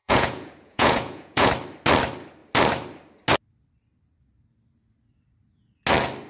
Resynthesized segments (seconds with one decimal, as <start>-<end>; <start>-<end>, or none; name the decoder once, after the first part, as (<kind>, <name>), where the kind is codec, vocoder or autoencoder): 0.0-1.5 (vocoder, Vocos)